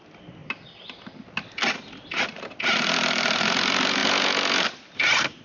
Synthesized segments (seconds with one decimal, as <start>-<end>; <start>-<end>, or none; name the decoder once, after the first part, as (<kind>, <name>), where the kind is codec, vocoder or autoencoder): none